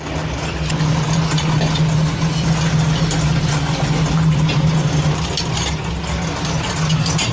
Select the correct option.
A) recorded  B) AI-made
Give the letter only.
A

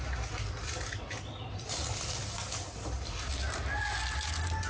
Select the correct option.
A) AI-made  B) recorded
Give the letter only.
B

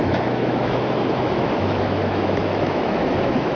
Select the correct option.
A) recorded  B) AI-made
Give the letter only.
B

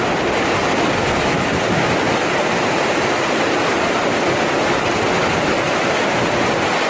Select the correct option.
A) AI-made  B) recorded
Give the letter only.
B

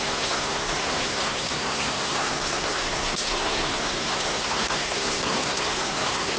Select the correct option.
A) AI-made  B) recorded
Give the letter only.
A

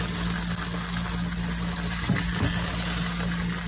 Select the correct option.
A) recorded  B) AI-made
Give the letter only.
A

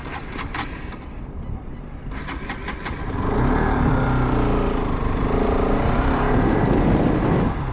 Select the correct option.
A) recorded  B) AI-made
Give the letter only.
B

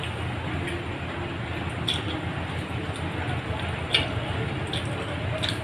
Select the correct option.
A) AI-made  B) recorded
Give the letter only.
B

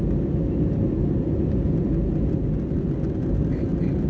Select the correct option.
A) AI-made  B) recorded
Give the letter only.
B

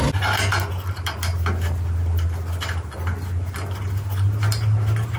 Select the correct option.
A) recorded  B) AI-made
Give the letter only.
A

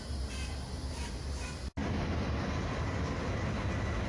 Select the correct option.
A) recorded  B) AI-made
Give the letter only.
A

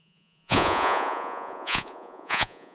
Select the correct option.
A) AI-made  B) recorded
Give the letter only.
A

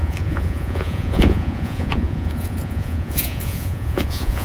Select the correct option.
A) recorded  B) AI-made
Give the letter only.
B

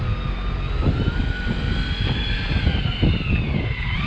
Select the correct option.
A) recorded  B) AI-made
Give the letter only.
A